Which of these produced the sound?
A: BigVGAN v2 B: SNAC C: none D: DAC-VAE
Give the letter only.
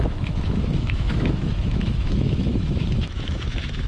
D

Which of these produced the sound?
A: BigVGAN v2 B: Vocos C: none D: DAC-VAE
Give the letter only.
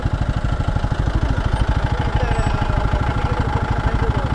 C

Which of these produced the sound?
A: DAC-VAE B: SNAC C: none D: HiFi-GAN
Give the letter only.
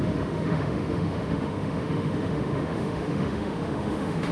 A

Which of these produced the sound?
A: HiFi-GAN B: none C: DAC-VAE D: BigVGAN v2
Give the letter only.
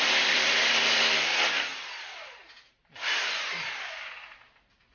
B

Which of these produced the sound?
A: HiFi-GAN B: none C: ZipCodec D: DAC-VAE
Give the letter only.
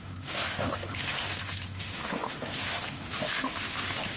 D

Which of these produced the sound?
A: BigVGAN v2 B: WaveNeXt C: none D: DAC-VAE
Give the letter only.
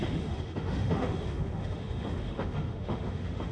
D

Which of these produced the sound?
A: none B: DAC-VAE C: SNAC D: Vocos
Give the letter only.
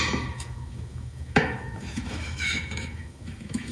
B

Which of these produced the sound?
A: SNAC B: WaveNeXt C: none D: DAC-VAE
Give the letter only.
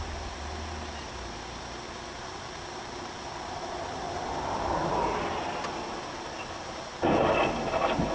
C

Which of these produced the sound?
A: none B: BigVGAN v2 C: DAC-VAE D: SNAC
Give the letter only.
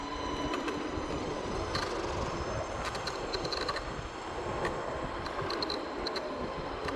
A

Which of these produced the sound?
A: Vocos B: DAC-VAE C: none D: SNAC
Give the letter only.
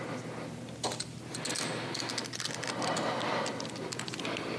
C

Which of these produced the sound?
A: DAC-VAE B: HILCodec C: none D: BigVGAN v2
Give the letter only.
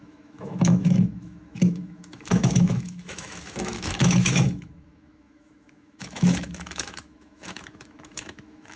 A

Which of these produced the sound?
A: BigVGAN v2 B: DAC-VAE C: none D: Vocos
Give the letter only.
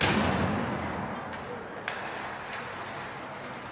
C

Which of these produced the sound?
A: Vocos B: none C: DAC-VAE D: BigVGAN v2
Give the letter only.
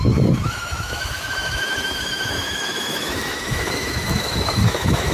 C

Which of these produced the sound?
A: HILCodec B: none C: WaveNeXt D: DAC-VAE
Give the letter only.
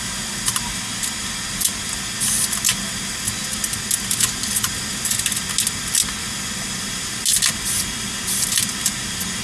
B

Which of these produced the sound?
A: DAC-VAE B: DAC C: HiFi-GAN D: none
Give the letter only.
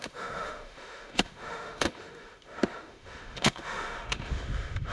A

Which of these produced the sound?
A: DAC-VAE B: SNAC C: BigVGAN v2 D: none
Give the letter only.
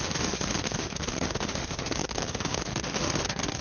A